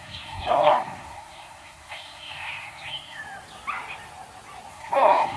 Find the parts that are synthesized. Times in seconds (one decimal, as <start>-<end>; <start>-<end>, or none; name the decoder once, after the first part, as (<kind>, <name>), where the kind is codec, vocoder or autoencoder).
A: 0.0-3.2 (codec, SNAC); 4.7-5.4